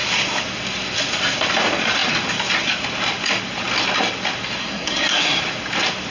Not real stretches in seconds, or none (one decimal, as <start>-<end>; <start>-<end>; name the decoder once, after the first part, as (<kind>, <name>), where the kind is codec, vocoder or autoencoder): 4.6-5.4 (codec, SNAC)